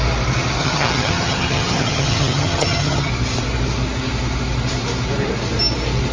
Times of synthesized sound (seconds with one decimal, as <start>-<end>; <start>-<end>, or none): 0.6-3.1